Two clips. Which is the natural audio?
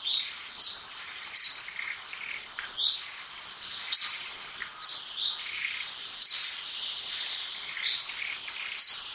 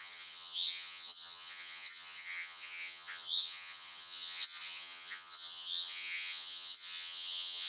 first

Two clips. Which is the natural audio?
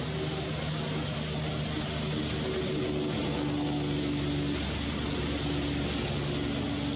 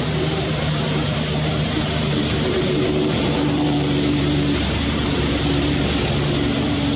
first